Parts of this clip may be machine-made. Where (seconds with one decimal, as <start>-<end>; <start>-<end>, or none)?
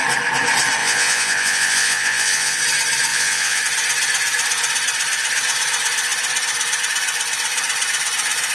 0.8-2.6; 3.1-3.6